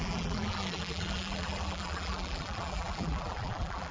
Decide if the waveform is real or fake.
fake